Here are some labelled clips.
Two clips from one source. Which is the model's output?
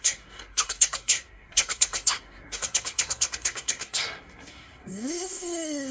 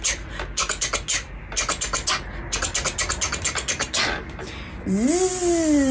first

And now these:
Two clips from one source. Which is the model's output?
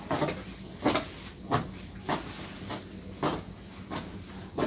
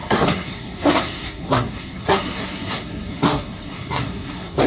second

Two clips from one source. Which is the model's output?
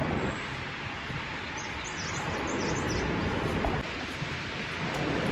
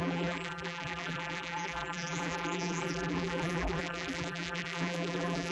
second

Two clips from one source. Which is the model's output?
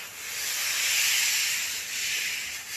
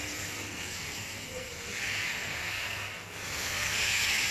second